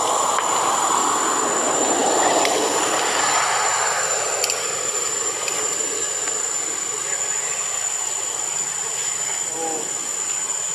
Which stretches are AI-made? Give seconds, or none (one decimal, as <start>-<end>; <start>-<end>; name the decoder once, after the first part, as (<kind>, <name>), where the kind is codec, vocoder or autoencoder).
none